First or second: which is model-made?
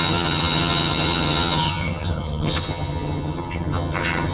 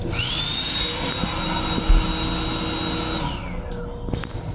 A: first